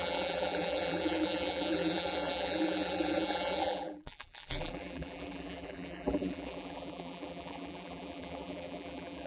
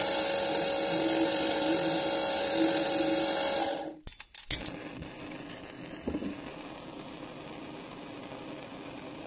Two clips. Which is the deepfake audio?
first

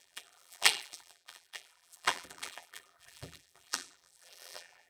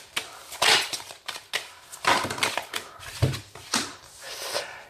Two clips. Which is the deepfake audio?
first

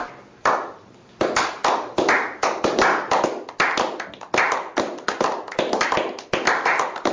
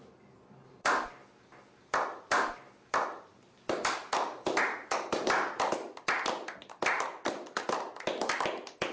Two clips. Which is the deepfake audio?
second